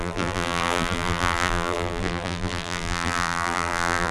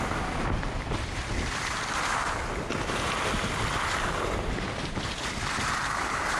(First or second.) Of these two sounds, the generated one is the first